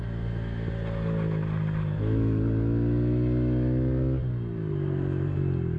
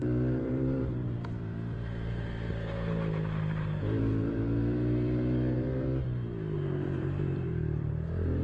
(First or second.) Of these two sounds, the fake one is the second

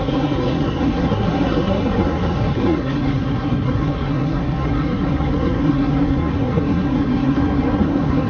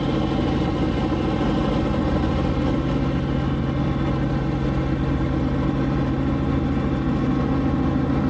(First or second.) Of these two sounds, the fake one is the first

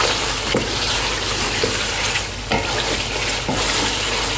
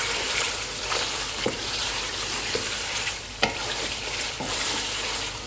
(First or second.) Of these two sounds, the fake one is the second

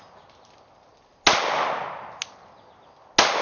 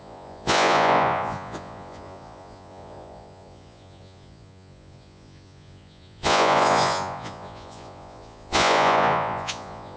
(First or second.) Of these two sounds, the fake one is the second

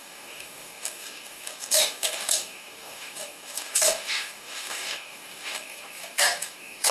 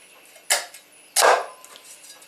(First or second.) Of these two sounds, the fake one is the first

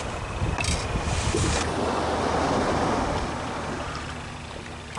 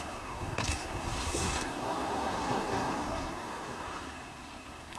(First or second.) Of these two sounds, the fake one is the second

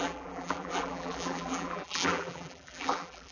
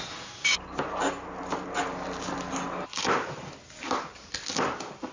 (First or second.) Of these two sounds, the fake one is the first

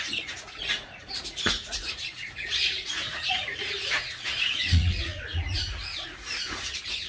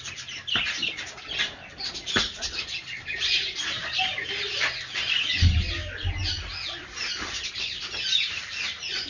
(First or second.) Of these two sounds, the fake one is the first